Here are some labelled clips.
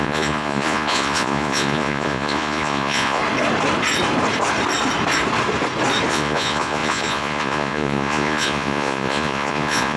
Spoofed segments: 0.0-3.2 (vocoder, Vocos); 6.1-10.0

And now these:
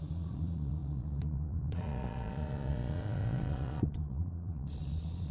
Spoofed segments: 0.0-5.3 (vocoder, Vocos)

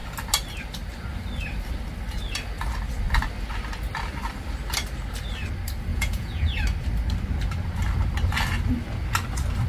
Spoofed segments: 5.9-6.6 (vocoder, Vocos)

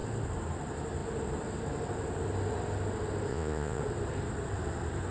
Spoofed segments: 3.3-3.8 (vocoder, Vocos)

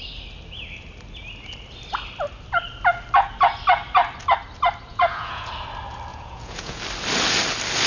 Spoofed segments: 4.9-5.5 (vocoder, Vocos); 6.1-6.8